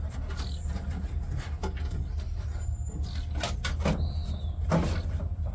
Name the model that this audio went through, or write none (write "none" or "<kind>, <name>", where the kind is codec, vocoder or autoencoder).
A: none